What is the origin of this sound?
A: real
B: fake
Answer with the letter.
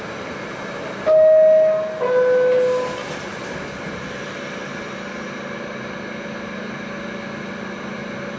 A